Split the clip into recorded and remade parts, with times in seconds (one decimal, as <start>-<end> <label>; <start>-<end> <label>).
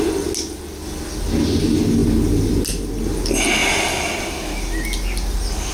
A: 0.0-2.0 recorded; 2.0-2.5 remade; 2.5-5.7 recorded